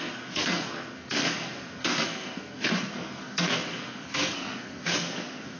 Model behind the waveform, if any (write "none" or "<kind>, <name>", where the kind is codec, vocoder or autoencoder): codec, SNAC